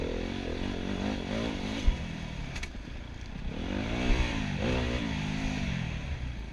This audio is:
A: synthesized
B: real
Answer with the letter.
B